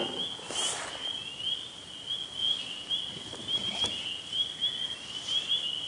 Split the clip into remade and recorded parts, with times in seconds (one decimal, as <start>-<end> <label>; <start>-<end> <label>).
0.0-5.9 recorded